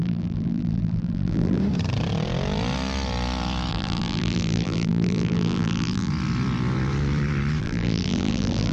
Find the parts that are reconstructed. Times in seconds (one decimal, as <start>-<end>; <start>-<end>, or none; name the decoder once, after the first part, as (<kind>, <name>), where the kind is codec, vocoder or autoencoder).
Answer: 0.0-1.6 (vocoder, BigVGAN v2); 3.7-6.1; 7.6-8.7